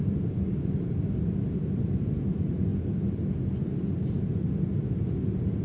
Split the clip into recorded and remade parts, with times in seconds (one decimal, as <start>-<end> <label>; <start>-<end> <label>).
0.0-5.6 recorded